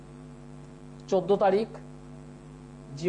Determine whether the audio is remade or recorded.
remade